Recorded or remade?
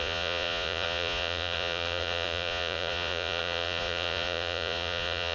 remade